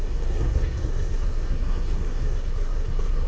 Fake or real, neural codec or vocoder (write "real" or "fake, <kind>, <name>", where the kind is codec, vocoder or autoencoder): fake, codec, SNAC